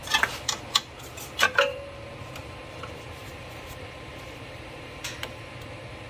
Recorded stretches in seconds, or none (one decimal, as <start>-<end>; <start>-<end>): 0.0-3.2; 5.4-6.1